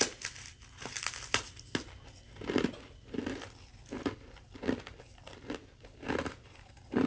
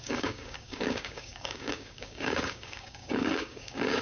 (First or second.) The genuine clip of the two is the first